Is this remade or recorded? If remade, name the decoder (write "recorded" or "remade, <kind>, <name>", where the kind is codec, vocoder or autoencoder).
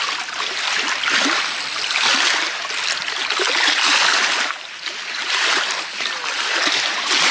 recorded